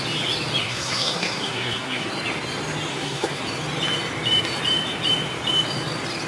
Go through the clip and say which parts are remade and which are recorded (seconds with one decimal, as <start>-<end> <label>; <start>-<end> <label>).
0.0-0.6 recorded; 0.6-2.1 remade; 2.1-2.9 recorded; 2.9-3.4 remade; 3.4-6.3 recorded